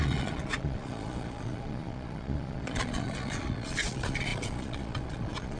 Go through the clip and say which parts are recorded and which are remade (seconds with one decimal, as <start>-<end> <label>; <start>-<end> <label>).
0.0-5.6 remade

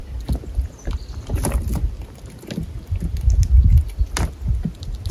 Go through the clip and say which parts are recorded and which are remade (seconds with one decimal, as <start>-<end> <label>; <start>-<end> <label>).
0.0-5.1 recorded

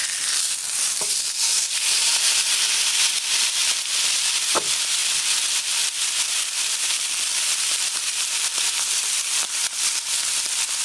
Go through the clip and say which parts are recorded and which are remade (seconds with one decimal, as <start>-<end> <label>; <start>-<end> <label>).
0.0-10.8 remade

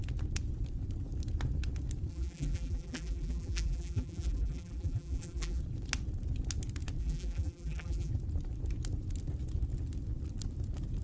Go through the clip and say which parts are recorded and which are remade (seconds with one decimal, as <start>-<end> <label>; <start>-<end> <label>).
0.0-2.1 recorded; 2.1-5.6 remade; 5.6-7.0 recorded; 7.0-8.1 remade; 8.1-11.0 recorded

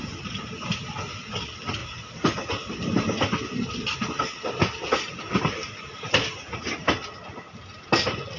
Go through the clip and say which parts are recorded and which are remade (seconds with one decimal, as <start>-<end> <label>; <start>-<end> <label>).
0.0-8.4 recorded